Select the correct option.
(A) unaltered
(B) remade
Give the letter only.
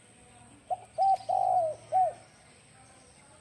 A